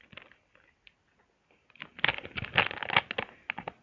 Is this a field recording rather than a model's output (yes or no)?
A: yes